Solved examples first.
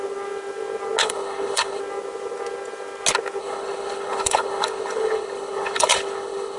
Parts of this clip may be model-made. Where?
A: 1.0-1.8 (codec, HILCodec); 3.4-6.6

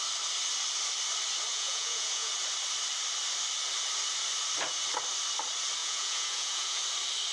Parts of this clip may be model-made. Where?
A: 1.5-2.3 (vocoder, Vocos); 5.8-6.8

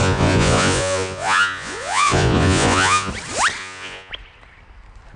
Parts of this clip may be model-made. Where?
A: 0.0-3.1 (vocoder, Vocos); 3.6-4.1

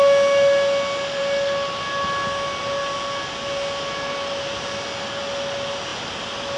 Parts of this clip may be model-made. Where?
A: none

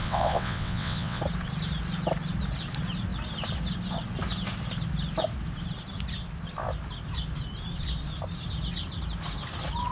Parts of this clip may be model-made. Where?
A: 0.0-1.2 (vocoder, WaveNeXt)

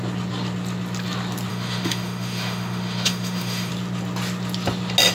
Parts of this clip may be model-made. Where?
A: 1.5-3.7 (autoencoder, DAC-VAE)

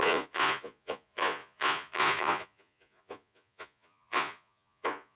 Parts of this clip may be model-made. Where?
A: 0.0-5.2 (vocoder, Vocos)

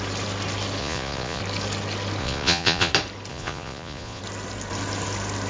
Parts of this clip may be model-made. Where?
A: 0.8-1.4 (vocoder, Vocos); 2.2-2.9; 3.3-4.2